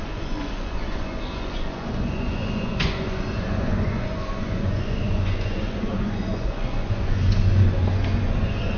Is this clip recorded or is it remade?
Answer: remade